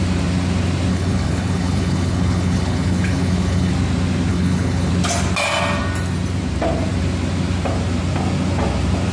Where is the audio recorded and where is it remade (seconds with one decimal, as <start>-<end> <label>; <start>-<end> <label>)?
0.0-0.9 recorded; 0.9-3.7 remade; 3.7-4.3 recorded; 4.3-4.9 remade; 4.9-9.1 recorded